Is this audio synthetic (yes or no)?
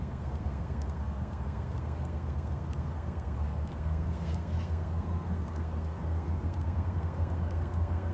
yes